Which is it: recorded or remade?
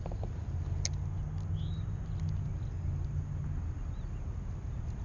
recorded